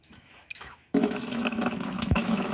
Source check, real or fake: fake